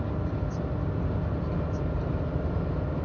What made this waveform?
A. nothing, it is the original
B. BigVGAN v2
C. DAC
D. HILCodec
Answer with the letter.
A